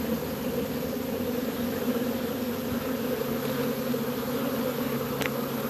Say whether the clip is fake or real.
real